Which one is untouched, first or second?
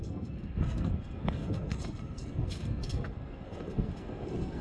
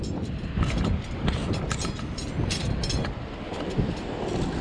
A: second